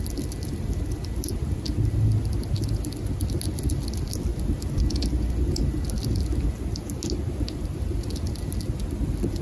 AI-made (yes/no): no